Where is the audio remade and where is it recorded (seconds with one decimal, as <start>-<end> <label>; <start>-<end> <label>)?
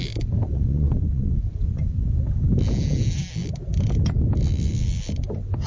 0.0-0.5 recorded; 0.5-2.2 remade; 2.2-5.7 recorded